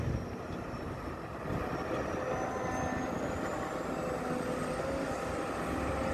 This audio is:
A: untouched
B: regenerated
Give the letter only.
A